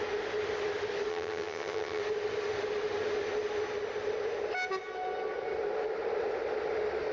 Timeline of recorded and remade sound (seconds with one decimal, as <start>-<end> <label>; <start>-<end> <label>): 0.0-1.1 recorded; 1.1-2.0 remade; 2.0-7.1 recorded